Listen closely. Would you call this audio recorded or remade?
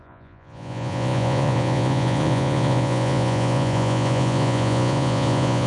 remade